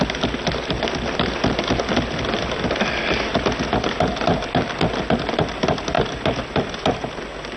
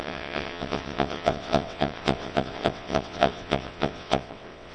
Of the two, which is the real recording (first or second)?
first